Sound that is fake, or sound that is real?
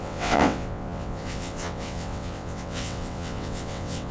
fake